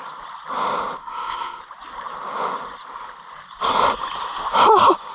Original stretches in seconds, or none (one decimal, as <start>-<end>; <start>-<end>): 0.0-1.0; 1.6-5.1